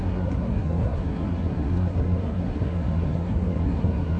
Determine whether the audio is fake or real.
fake